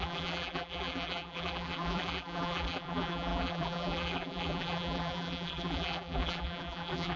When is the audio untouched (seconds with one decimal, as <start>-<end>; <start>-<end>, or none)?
none